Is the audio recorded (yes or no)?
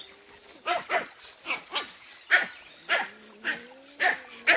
yes